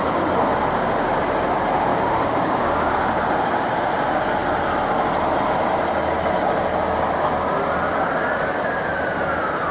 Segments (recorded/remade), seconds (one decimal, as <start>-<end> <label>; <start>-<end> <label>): 0.0-1.9 recorded; 1.9-2.9 remade; 2.9-9.7 recorded

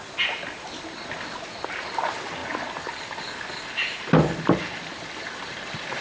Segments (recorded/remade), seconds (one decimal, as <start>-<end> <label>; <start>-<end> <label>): 0.0-6.0 recorded

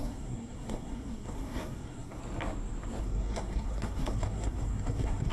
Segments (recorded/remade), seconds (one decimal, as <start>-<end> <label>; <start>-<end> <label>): 0.0-2.2 remade; 2.2-3.0 recorded; 3.0-5.3 remade

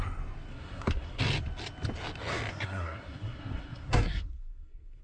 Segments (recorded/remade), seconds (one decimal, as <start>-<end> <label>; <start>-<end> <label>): 0.0-0.5 recorded; 0.5-1.2 remade; 1.2-2.5 recorded; 2.5-5.0 remade

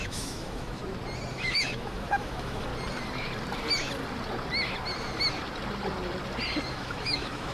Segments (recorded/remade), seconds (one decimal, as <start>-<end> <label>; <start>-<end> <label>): 0.0-0.8 remade; 0.8-1.3 recorded; 1.3-2.7 remade; 2.7-6.7 recorded; 6.7-7.5 remade

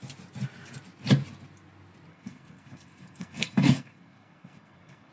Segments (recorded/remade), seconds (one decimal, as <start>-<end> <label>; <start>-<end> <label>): 0.0-2.1 recorded; 2.1-5.1 remade

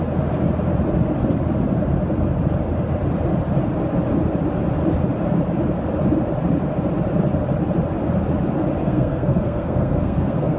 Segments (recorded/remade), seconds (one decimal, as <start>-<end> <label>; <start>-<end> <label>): 0.0-8.8 recorded; 8.8-10.6 remade

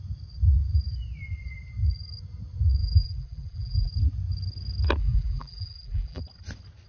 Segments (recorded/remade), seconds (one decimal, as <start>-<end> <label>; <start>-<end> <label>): 0.0-2.8 recorded; 2.8-3.9 remade; 3.9-5.0 recorded; 5.0-6.2 remade; 6.2-6.9 recorded